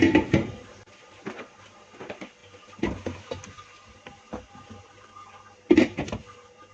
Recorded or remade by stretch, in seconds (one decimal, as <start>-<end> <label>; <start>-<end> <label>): 0.0-6.7 recorded